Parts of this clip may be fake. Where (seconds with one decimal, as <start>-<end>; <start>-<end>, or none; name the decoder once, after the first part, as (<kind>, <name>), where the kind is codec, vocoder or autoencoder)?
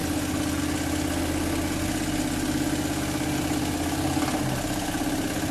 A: none